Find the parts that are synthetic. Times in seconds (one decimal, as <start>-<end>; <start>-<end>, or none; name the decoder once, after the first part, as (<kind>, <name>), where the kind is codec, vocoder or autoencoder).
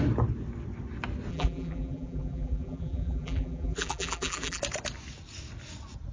1.3-4.6 (vocoder, BigVGAN v2)